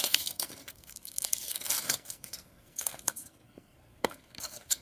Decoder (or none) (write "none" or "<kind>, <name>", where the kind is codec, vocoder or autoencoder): codec, SNAC